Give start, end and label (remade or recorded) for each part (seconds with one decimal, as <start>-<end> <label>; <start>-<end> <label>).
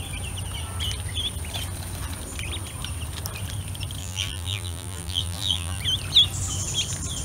0.0-4.0 recorded; 4.0-5.8 remade; 5.8-7.2 recorded